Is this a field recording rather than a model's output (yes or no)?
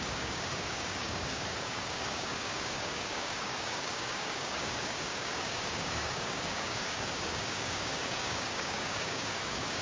no